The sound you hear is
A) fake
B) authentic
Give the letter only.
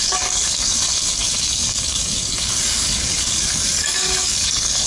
A